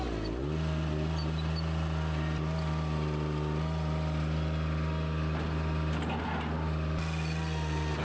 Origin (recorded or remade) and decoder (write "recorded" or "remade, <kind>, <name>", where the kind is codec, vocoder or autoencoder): recorded